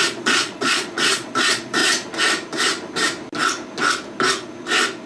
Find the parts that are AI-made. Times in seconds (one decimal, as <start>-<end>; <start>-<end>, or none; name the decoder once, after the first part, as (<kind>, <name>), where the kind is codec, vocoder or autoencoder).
0.0-1.8 (vocoder, Vocos)